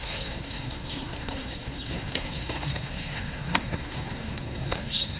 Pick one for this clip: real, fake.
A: fake